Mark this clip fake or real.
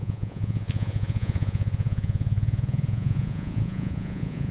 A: fake